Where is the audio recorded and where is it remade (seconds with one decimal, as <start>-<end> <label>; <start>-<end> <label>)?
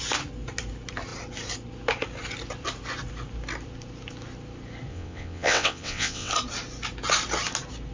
0.0-4.9 recorded; 4.9-6.3 remade; 6.3-7.9 recorded